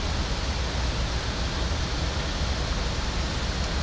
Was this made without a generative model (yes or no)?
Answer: yes